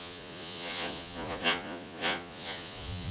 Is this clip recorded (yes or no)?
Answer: no